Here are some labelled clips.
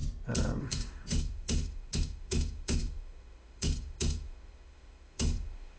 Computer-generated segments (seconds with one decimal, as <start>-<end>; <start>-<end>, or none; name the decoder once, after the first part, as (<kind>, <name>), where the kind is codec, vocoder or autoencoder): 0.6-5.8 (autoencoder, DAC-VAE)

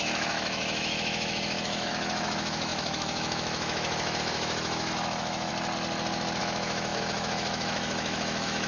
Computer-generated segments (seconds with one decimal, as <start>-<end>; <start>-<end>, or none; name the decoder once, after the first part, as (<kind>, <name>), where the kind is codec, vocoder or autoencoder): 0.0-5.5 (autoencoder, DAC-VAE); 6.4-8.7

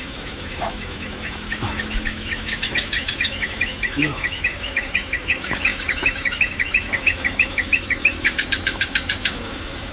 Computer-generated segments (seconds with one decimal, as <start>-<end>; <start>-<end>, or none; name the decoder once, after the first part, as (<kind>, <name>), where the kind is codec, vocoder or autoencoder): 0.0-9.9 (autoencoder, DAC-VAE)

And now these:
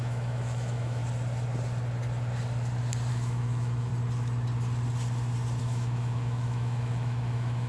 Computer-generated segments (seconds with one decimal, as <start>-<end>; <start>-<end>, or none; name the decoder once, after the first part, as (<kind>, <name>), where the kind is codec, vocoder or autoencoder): 0.0-1.0 (autoencoder, DAC-VAE); 3.1-3.9; 5.6-7.7

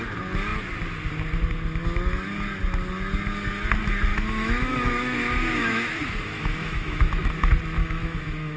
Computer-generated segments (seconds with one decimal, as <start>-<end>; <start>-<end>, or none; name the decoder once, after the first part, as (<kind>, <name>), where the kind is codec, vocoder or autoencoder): 4.1-7.3 (autoencoder, DAC-VAE); 7.8-8.6

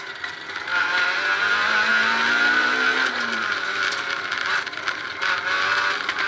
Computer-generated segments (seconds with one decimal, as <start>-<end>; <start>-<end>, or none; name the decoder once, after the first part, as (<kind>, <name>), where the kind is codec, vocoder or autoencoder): none

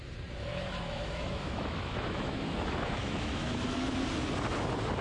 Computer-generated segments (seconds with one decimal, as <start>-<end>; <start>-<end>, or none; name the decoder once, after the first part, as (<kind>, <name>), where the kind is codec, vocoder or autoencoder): 0.5-3.5 (autoencoder, DAC-VAE)